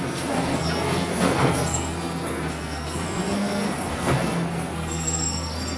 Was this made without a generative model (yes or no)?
no